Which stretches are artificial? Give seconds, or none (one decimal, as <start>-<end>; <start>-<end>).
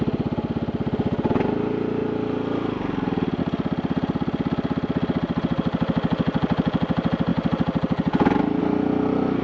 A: none